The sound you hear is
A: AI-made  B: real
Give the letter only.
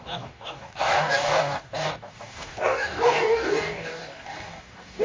A